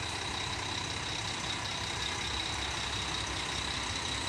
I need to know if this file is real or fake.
real